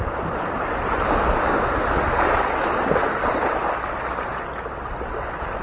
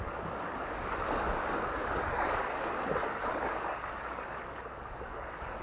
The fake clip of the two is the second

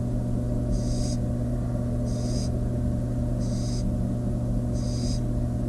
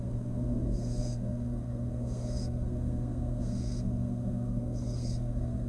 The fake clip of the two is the second